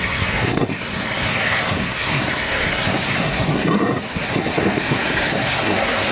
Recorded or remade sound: remade